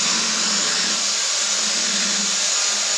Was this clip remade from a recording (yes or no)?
no